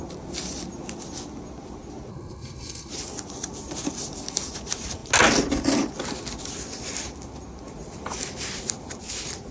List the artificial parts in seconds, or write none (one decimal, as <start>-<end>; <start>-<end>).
2.1-2.9